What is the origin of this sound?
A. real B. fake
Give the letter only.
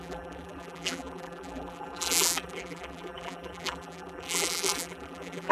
B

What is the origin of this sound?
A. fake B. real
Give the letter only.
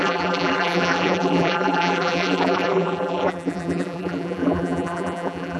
A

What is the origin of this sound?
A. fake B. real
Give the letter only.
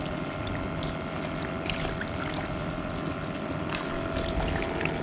B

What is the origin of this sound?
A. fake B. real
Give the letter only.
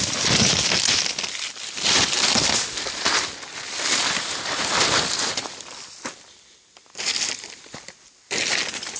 A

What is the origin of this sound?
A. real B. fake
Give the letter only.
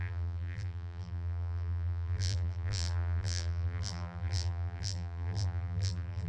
B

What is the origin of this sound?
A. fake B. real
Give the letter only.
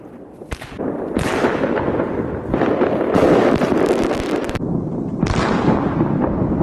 A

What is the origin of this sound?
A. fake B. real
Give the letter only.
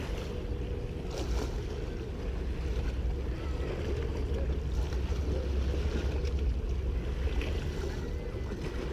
B